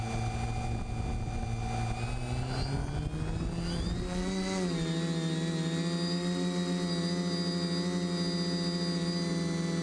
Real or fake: real